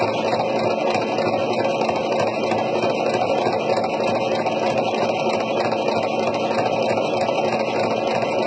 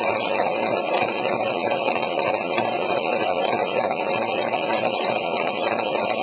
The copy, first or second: second